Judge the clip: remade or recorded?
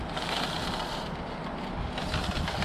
recorded